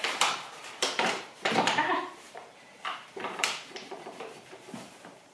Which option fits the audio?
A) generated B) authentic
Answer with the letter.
A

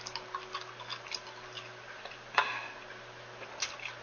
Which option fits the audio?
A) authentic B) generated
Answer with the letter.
A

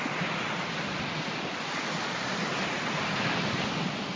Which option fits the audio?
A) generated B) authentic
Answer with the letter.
B